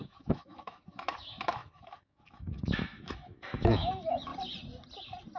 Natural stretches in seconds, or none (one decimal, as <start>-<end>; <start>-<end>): 4.3-5.4